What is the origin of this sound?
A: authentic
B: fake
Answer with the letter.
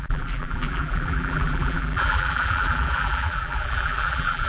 B